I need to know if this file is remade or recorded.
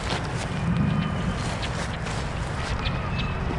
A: recorded